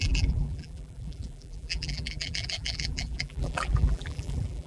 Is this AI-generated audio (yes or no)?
yes